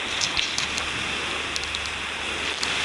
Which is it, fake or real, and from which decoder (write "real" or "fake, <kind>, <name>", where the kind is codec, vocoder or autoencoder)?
real